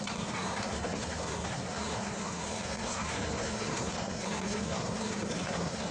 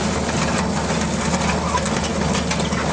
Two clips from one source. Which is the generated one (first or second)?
first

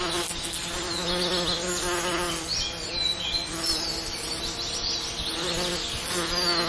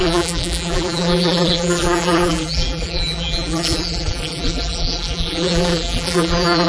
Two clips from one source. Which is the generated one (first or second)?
second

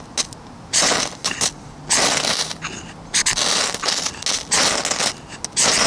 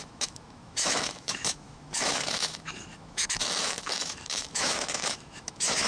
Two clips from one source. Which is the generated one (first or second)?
second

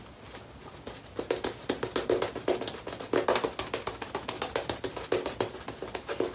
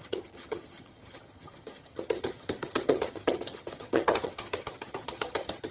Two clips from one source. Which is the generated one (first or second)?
second